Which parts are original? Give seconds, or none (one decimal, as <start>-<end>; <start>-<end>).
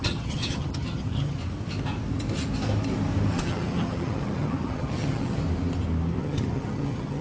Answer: 1.4-3.3; 5.4-6.2